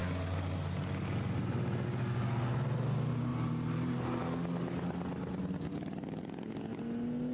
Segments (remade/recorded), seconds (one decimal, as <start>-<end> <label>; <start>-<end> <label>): 0.0-3.3 recorded; 3.3-4.2 remade; 4.2-7.3 recorded